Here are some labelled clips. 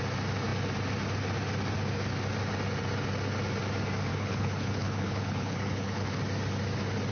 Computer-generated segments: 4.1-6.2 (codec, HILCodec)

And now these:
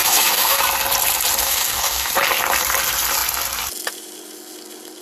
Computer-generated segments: 0.0-0.6 (codec, DAC); 1.4-2.1